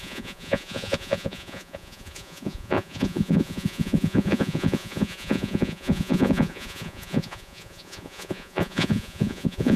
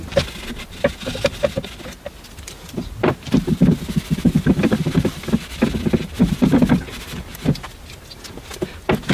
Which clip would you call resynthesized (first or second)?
first